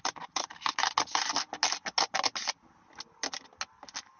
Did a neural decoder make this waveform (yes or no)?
no